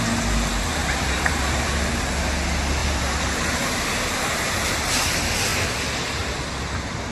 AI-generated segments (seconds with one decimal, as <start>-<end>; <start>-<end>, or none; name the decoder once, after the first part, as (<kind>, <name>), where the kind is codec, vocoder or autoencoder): 0.8-1.4 (vocoder, BigVGAN v2); 2.8-4.5